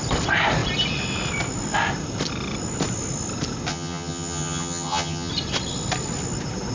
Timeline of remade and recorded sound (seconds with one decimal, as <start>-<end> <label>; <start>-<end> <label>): 0.0-3.7 recorded; 3.7-5.3 remade; 5.3-6.7 recorded